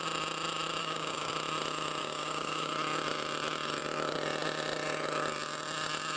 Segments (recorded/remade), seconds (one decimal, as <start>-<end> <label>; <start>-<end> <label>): 0.0-0.8 recorded; 0.8-1.3 remade; 1.3-2.0 recorded; 2.0-2.7 remade; 2.7-6.2 recorded